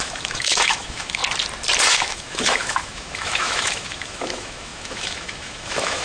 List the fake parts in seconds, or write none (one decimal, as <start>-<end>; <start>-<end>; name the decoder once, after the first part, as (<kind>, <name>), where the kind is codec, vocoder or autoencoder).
0.0-1.2 (autoencoder, DAC-VAE); 1.9-6.0